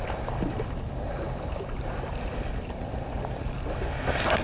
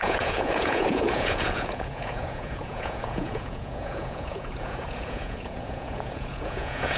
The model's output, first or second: second